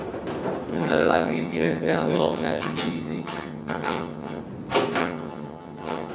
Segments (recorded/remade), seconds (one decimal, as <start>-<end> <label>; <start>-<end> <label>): 0.0-0.7 recorded; 0.7-4.4 remade; 4.4-5.0 recorded; 5.0-6.1 remade